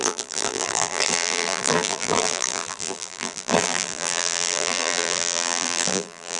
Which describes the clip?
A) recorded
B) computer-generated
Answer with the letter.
B